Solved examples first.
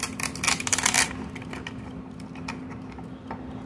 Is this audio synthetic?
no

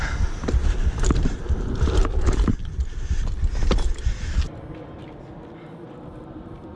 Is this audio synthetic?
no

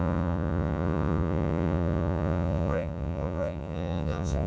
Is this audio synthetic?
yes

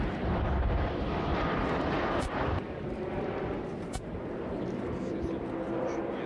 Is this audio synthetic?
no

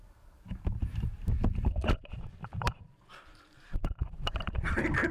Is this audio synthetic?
yes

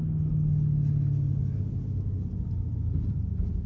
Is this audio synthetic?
no